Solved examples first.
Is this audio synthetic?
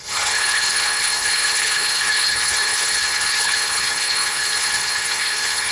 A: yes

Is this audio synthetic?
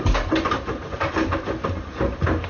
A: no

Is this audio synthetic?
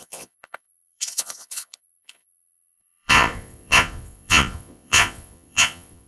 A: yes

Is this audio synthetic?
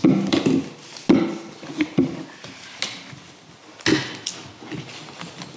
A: no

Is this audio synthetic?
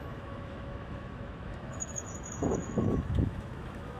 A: yes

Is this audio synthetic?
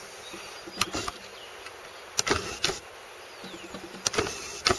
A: no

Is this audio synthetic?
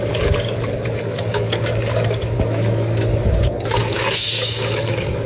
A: yes